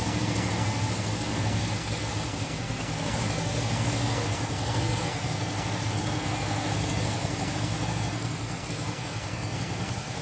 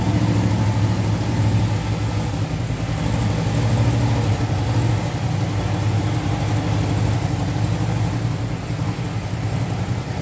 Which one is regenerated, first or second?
first